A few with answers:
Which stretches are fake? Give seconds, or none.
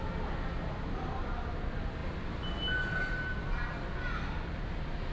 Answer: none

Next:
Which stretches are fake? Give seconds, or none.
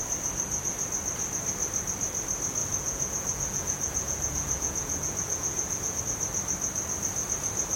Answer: 2.6-6.0 (vocoder, Vocos)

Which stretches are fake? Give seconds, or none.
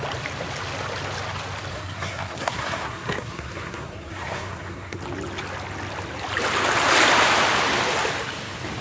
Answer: 1.7-5.0 (codec, SNAC)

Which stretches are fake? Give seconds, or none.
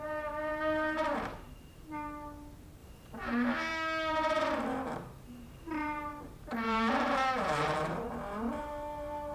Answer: 0.0-3.7 (vocoder, BigVGAN v2); 4.7-9.3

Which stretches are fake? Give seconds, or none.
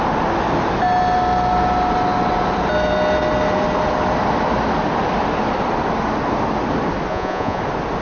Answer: 7.1-7.6 (vocoder, Vocos)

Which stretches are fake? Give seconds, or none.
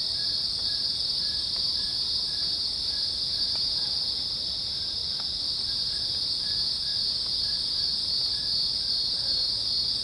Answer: none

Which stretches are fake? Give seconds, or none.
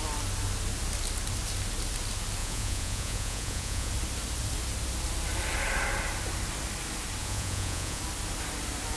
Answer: 2.4-3.9 (vocoder, Vocos); 7.2-8.0